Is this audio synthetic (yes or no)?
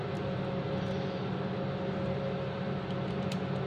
no